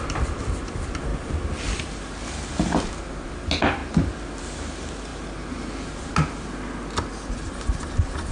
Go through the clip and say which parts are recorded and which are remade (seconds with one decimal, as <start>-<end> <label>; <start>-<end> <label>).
0.0-3.8 recorded; 3.8-4.4 remade; 4.4-8.3 recorded